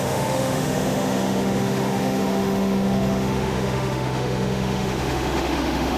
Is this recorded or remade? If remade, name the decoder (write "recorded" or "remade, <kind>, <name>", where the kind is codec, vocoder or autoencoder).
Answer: remade, autoencoder, DAC-VAE